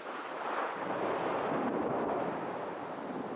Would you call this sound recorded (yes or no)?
yes